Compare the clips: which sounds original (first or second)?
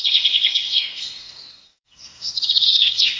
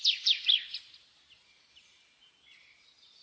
second